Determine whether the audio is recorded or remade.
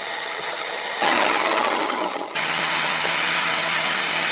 remade